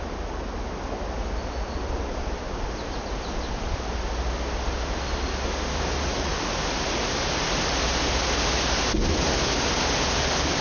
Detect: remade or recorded recorded